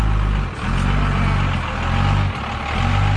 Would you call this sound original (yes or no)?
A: yes